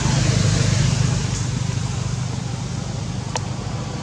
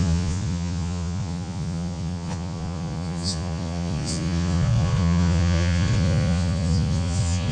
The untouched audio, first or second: first